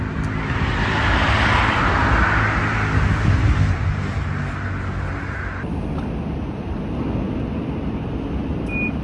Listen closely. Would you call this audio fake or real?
real